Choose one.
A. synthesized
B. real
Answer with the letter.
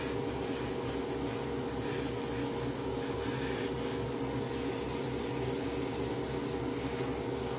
B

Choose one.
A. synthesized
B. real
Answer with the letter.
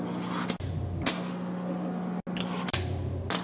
B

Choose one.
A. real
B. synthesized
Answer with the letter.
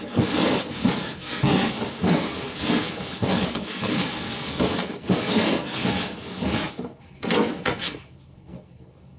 B